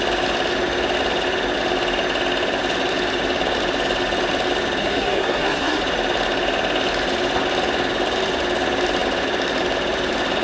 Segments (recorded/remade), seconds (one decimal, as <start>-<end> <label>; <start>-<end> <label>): 0.0-4.8 recorded; 4.8-5.8 remade; 5.8-10.4 recorded